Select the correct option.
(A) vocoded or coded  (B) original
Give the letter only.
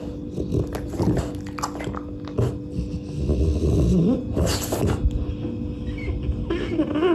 B